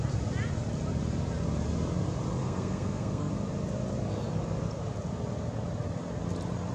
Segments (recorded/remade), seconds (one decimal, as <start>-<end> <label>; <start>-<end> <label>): 0.0-2.4 recorded; 2.4-3.3 remade; 3.3-6.7 recorded